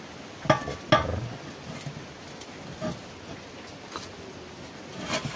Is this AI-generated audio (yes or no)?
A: no